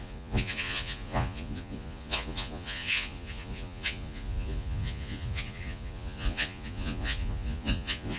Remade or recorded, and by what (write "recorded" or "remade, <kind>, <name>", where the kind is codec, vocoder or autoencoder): remade, vocoder, Vocos